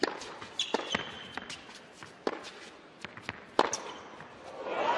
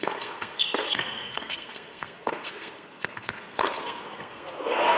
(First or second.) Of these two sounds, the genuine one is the first